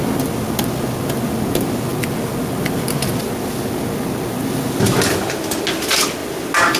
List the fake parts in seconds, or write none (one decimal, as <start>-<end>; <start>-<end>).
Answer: none

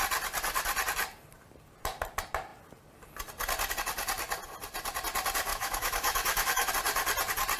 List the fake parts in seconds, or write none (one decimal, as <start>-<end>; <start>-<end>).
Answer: 5.5-6.7

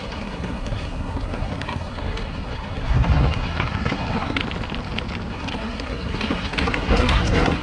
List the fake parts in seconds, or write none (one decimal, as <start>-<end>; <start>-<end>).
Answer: 0.0-4.4; 5.3-7.6

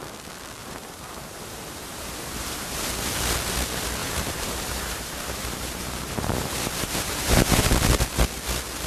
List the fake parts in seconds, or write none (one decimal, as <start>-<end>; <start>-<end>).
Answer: 0.6-2.8; 4.0-7.6

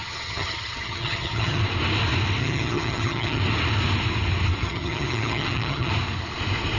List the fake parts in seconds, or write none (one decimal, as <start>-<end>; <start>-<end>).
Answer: 0.0-1.6; 2.4-3.4; 4.6-5.9

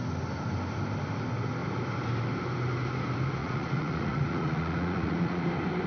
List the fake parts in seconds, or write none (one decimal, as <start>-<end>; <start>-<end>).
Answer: 3.4-5.5